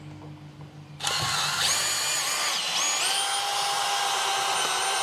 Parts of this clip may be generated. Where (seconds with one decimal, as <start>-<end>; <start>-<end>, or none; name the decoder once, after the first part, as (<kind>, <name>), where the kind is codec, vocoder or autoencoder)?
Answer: none